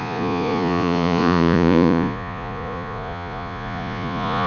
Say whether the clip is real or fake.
fake